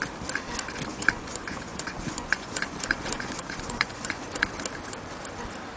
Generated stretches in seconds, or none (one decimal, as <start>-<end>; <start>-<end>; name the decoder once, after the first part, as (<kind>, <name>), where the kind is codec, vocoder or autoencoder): 0.9-4.4 (vocoder, Vocos)